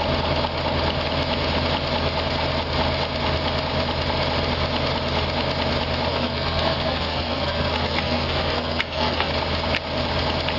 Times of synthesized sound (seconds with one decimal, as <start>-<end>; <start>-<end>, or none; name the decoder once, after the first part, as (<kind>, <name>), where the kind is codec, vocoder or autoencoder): 6.1-9.3 (codec, SNAC)